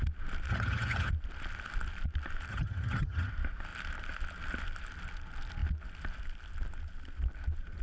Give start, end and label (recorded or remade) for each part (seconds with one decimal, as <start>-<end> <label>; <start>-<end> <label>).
0.0-0.5 recorded; 0.5-1.1 remade; 1.1-2.5 recorded; 2.5-3.3 remade; 3.3-7.8 recorded